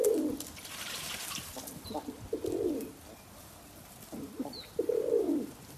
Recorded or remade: remade